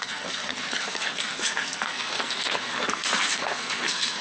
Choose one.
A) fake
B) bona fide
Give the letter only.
A